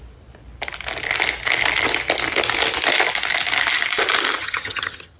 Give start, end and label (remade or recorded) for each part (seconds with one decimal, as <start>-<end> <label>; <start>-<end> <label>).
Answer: 0.0-4.4 recorded; 4.4-5.2 remade